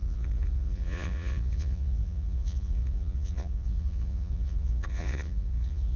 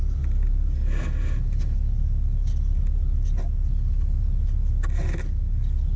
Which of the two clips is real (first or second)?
second